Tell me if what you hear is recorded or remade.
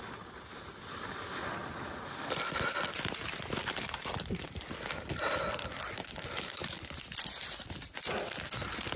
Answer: recorded